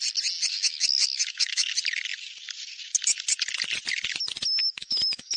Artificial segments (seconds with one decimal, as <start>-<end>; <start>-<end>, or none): 0.5-1.7; 4.6-5.4

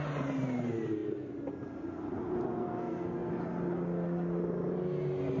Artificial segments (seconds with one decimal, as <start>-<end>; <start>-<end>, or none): 2.6-3.3

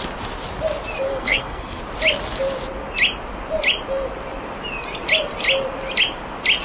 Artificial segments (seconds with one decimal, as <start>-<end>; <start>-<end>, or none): 1.1-1.8

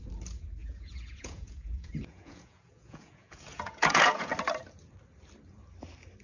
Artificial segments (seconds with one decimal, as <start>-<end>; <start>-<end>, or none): 0.6-4.3

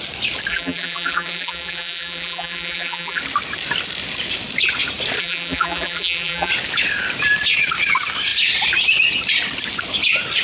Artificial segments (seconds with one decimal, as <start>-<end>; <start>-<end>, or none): 0.5-3.2; 5.2-6.5

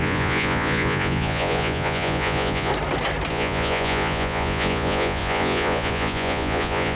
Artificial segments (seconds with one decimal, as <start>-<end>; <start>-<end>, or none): 0.0-2.7; 3.3-7.0

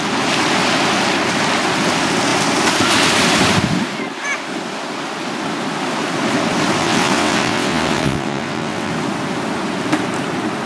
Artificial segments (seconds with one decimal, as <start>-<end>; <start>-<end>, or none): 6.8-8.9

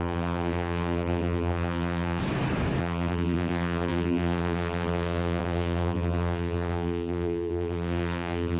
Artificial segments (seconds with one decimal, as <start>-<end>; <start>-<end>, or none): 0.0-2.2; 2.8-8.6